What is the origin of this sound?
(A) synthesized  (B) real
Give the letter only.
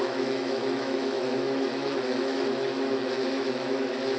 A